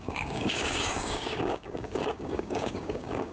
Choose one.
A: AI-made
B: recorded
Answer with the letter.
A